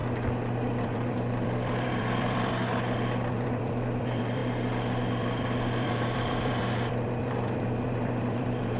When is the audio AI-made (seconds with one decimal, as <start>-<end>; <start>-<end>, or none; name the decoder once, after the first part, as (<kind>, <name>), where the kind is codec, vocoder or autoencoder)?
0.8-4.4 (vocoder, BigVGAN v2); 5.1-8.8